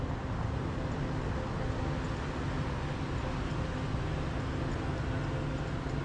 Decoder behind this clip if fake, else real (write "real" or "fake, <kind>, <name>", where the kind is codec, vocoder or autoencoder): real